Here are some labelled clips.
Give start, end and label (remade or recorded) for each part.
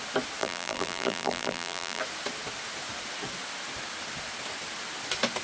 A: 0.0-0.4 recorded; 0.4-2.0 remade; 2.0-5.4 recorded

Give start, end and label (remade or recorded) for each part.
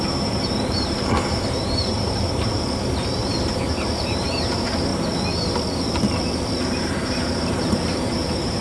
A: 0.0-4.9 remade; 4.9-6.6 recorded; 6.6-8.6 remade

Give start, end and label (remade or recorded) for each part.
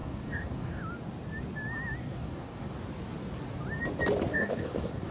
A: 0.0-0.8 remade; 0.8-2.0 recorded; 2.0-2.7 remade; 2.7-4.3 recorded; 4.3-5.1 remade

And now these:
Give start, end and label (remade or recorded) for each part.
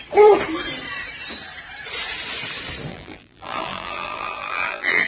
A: 0.0-2.9 recorded; 2.9-5.1 remade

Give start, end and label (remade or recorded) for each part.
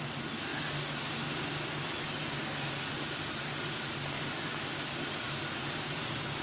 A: 0.0-6.4 recorded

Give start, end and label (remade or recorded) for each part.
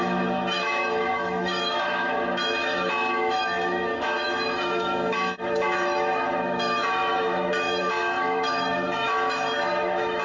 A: 0.0-10.2 remade